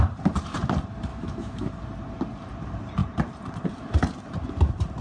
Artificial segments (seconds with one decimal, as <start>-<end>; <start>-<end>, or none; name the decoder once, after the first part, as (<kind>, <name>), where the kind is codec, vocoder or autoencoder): 1.1-1.7 (autoencoder, DAC-VAE)